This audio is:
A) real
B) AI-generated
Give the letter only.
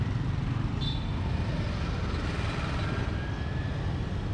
A